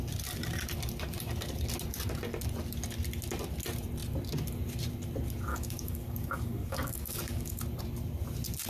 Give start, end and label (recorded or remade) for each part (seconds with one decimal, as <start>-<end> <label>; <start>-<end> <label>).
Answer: 0.0-5.5 recorded; 5.5-7.6 remade; 7.6-8.7 recorded

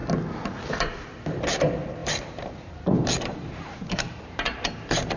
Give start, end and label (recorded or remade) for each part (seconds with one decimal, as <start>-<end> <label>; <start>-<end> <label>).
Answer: 0.0-2.0 recorded; 2.0-5.2 remade